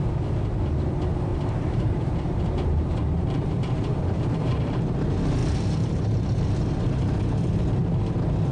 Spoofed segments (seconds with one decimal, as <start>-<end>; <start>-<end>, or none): 1.3-4.8; 5.4-6.6